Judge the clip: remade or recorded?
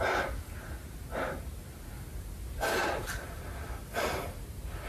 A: recorded